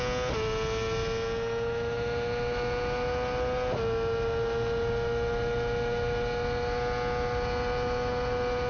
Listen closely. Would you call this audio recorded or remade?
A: recorded